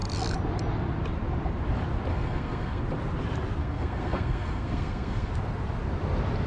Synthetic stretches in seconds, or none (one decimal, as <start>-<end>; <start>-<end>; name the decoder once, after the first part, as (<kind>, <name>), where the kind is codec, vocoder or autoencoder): 2.1-2.8 (codec, SNAC); 3.6-5.3